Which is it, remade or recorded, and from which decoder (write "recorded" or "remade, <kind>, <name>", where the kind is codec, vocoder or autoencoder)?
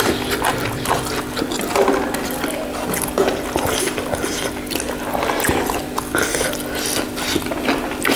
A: recorded